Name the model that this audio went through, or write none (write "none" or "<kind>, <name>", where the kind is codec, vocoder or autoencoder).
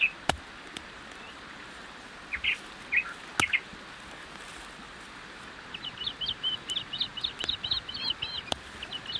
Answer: none